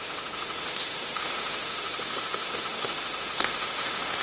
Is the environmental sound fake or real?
fake